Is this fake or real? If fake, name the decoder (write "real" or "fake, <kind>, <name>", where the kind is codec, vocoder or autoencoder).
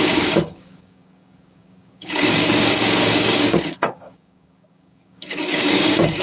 fake, codec, DAC